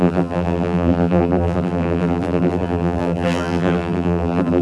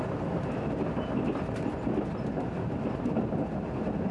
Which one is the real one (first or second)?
second